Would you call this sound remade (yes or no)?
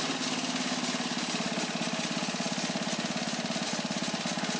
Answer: no